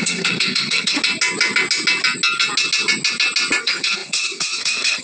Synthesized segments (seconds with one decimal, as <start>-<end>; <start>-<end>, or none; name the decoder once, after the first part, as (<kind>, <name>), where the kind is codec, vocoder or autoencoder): 0.0-1.0 (codec, SNAC); 3.6-5.0